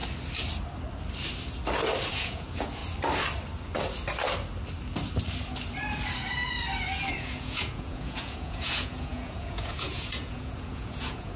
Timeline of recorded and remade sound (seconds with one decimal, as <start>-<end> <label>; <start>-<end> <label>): 0.0-2.1 recorded; 2.1-2.8 remade; 2.8-7.1 recorded; 7.1-11.4 remade